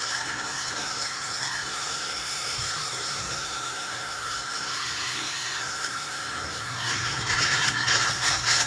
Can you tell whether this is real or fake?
fake